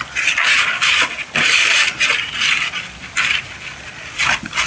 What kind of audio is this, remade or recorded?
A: recorded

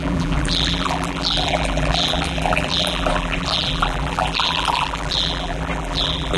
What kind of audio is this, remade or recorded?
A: remade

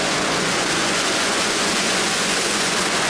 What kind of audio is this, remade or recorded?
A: remade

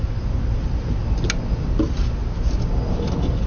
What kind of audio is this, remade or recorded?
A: recorded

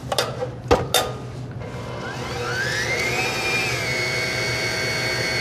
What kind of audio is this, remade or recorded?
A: recorded